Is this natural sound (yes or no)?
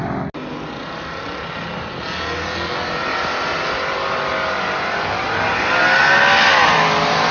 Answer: yes